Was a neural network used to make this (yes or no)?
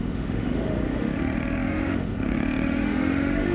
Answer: yes